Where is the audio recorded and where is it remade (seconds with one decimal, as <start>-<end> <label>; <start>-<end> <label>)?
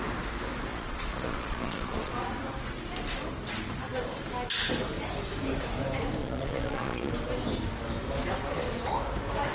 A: 0.0-0.7 recorded; 0.7-2.1 remade; 2.1-6.2 recorded; 6.2-7.1 remade; 7.1-9.5 recorded